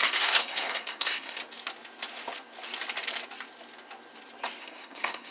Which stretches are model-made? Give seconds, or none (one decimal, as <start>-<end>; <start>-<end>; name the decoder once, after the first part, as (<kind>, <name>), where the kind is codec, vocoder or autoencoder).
0.0-1.4 (codec, SNAC); 4.6-5.3